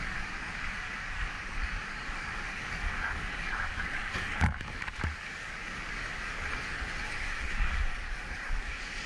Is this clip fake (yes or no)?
yes